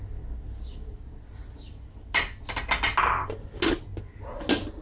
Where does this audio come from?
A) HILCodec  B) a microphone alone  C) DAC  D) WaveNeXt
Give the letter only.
B